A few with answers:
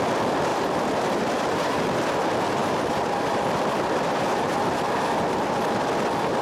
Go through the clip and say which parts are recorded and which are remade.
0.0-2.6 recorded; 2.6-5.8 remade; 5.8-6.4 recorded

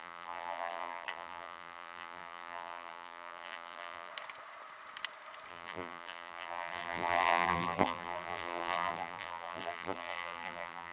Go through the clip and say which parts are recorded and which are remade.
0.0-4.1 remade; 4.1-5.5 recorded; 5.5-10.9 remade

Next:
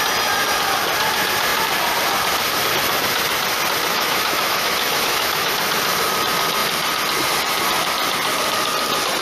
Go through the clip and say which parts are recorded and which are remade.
0.0-3.9 recorded; 3.9-5.5 remade; 5.5-9.2 recorded